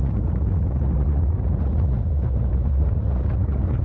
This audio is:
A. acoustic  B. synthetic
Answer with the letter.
B